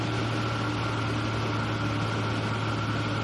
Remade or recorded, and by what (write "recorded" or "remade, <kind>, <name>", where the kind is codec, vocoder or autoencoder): recorded